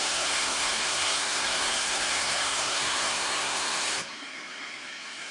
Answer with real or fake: fake